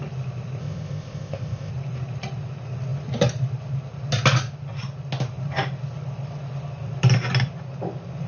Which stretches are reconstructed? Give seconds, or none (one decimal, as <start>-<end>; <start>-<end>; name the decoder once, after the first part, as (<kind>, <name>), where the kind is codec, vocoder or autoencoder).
0.6-1.7 (codec, ZipCodec)